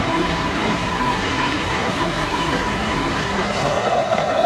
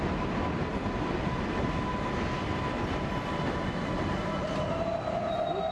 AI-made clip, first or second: first